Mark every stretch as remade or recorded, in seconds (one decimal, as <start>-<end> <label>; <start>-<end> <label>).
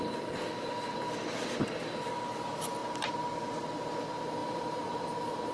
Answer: 0.0-4.4 recorded; 4.4-5.0 remade; 5.0-5.5 recorded